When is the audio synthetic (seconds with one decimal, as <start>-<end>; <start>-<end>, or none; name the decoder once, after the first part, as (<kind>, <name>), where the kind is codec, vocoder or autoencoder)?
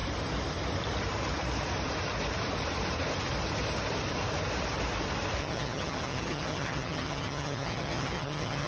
5.4-8.7 (vocoder, HiFi-GAN)